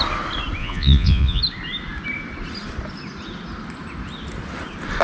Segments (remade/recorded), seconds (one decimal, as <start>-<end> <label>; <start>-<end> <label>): 0.0-0.6 recorded; 0.6-1.4 remade; 1.4-5.0 recorded